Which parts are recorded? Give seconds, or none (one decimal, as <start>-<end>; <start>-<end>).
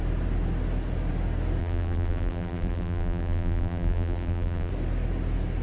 0.0-1.6; 4.7-5.6